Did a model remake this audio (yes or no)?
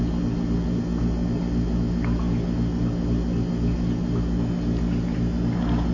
no